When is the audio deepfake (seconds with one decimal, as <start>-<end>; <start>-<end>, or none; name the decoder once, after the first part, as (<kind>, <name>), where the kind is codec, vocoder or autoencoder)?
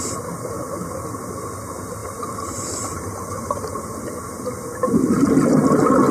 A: none